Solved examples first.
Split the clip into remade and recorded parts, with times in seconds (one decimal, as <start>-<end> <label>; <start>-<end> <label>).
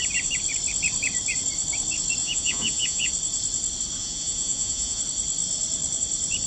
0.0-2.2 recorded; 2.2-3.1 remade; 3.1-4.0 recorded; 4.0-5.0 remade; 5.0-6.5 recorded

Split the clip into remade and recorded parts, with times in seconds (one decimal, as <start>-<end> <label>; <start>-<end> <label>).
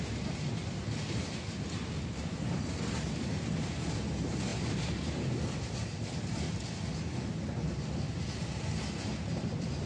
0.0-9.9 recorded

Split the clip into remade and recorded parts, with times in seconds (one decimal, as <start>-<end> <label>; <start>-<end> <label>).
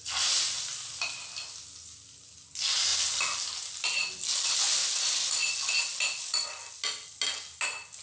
0.0-8.0 recorded